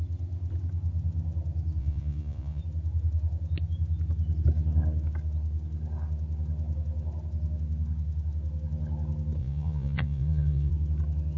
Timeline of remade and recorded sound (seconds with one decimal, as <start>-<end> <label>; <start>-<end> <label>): 0.0-1.8 recorded; 1.8-2.6 remade; 2.6-9.4 recorded; 9.4-10.7 remade; 10.7-11.4 recorded

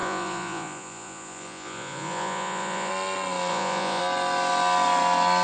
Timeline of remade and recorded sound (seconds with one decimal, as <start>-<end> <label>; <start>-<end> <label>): 0.0-2.9 remade; 2.9-3.5 recorded; 3.5-4.0 remade; 4.0-5.4 recorded

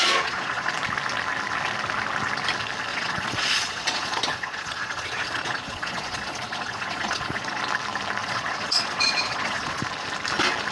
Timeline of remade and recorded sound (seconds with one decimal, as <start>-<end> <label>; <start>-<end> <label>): 0.0-0.7 remade; 0.7-2.9 recorded; 2.9-7.6 remade; 7.6-8.2 recorded; 8.2-9.8 remade; 9.8-10.7 recorded

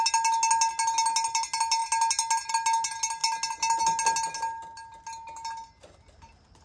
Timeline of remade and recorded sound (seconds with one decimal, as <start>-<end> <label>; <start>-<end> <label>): 0.0-6.6 recorded

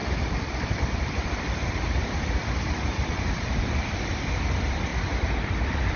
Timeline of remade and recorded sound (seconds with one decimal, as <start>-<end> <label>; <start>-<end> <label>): 0.0-6.0 recorded